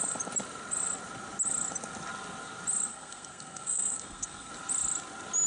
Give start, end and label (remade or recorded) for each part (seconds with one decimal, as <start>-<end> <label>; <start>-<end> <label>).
0.0-2.9 recorded; 2.9-4.5 remade; 4.5-5.5 recorded